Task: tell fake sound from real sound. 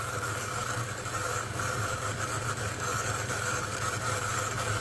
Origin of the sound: fake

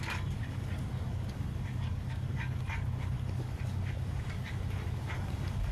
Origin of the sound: fake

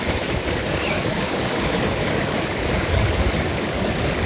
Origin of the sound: fake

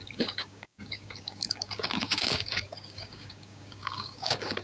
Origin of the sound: fake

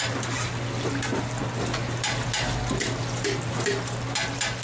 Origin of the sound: real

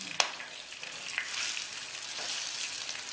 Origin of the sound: real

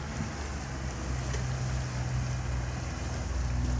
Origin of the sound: real